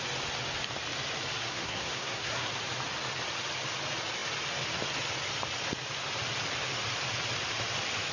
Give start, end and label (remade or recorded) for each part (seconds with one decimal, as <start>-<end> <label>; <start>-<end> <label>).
0.0-1.4 recorded; 1.4-2.5 remade; 2.5-8.1 recorded